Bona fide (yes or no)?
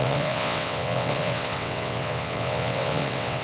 no